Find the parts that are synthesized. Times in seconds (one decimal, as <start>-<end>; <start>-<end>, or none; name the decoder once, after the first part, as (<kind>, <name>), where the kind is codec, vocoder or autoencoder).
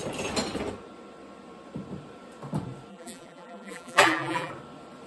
2.9-4.5 (vocoder, BigVGAN v2)